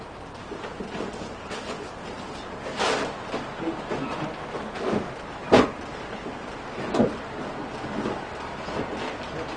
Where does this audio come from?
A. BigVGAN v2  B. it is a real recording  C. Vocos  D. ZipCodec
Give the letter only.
B